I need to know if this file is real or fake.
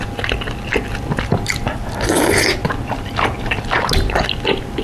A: real